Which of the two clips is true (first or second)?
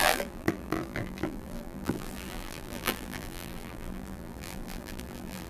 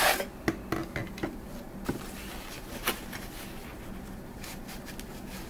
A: second